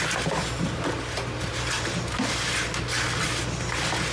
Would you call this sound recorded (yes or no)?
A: yes